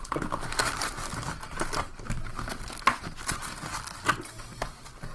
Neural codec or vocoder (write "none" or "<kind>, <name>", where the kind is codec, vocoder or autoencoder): none